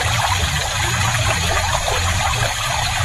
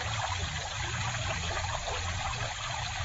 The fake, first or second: first